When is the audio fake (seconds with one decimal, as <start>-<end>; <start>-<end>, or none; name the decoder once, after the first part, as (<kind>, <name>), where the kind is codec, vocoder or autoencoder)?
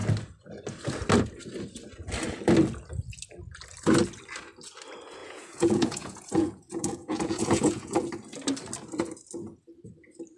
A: 5.2-8.1 (vocoder, Vocos)